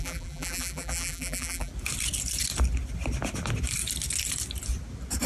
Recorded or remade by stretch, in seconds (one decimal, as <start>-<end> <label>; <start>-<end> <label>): 0.0-1.7 remade; 1.7-5.3 recorded